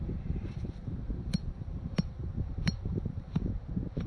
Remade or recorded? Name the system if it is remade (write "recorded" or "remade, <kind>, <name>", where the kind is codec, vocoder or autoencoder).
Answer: remade, vocoder, BigVGAN v2